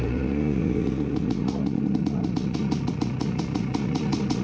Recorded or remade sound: remade